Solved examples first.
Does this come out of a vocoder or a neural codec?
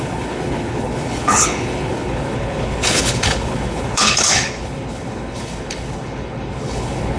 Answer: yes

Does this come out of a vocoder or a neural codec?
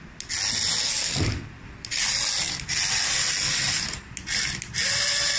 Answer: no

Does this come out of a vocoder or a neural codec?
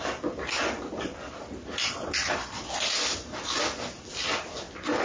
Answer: no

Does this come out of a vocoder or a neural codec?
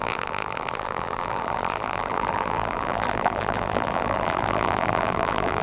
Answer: yes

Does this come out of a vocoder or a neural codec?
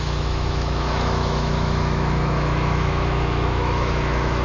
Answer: yes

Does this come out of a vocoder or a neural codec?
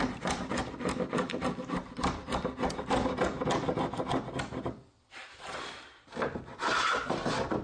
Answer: yes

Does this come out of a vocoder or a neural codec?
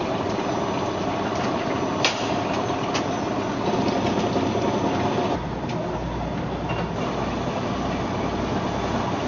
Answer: no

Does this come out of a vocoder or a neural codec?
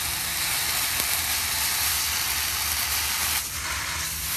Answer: no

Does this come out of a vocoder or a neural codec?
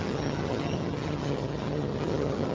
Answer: yes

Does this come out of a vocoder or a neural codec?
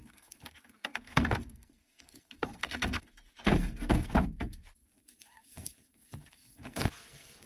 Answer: yes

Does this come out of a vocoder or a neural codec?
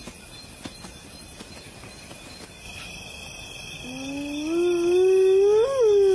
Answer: no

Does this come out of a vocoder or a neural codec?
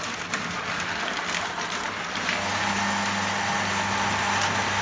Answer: no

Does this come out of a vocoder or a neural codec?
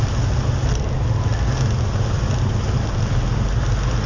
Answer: no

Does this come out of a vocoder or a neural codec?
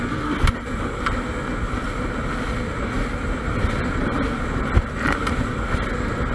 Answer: no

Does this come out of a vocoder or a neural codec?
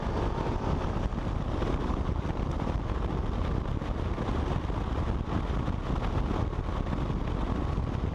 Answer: no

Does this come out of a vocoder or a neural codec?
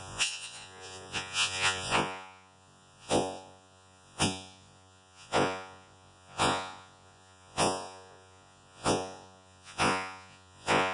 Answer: yes